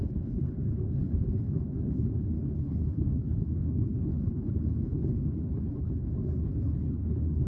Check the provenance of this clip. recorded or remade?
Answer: remade